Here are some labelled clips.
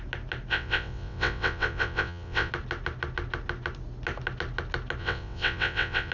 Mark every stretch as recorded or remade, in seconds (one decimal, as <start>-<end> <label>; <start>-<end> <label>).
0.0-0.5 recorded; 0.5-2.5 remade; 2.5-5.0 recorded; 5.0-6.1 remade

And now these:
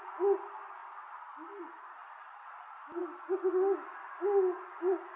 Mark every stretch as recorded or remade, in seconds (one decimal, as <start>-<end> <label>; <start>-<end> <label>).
0.0-5.2 recorded

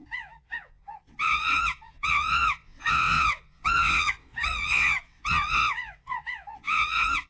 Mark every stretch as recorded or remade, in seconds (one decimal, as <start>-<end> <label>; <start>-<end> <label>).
0.0-7.3 remade